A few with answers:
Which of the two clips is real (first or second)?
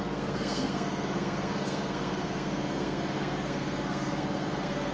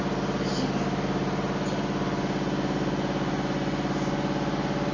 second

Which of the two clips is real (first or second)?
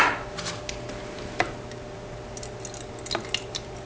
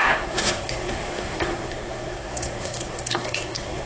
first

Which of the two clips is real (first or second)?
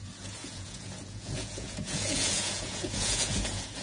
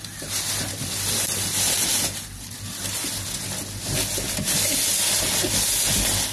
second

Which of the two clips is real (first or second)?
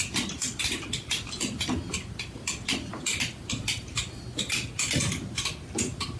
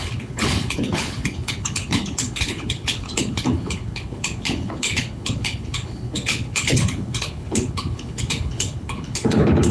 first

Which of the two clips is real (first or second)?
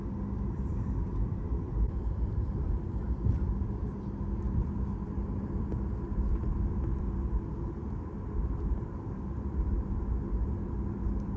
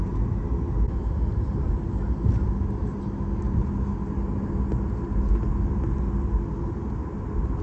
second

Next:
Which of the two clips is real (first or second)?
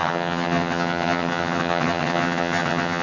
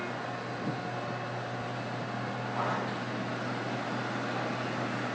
second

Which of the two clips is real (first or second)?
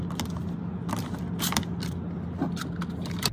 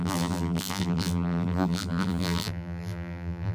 first